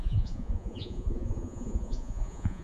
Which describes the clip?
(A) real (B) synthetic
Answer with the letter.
B